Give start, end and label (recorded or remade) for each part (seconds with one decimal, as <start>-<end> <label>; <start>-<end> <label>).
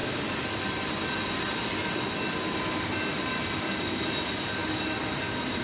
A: 0.0-5.6 recorded